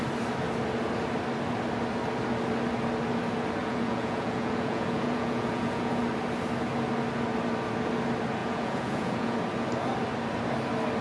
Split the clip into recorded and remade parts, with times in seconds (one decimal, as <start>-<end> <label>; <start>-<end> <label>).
0.0-3.6 recorded; 3.6-6.0 remade; 6.0-8.4 recorded; 8.4-9.4 remade; 9.4-11.0 recorded